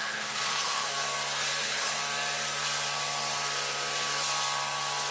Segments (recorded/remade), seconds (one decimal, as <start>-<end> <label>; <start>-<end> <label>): 0.0-0.9 remade; 0.9-1.6 recorded; 1.6-2.0 remade; 2.0-5.1 recorded

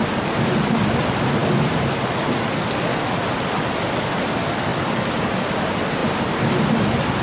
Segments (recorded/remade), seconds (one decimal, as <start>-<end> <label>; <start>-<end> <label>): 0.0-7.2 recorded